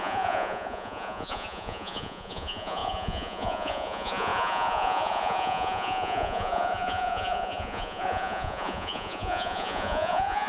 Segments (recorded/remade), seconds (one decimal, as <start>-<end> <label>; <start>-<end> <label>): 0.0-10.5 remade